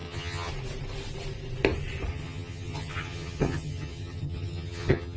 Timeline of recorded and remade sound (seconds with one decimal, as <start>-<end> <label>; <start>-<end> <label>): 0.0-0.5 remade; 0.5-2.1 recorded; 2.1-5.2 remade